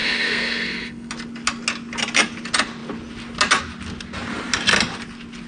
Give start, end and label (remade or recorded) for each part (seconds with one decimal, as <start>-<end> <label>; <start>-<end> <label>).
0.0-1.1 remade; 1.1-5.5 recorded